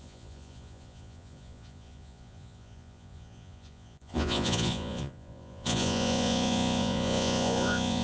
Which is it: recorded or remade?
remade